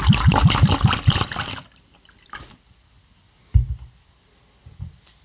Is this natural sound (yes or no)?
yes